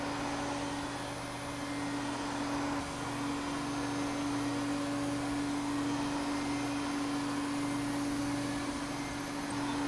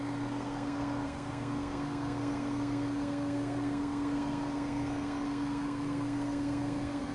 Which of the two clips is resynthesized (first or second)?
second